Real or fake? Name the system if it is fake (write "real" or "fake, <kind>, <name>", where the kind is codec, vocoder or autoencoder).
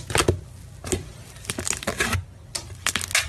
real